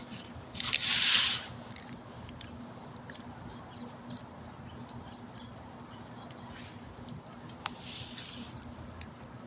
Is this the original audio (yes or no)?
no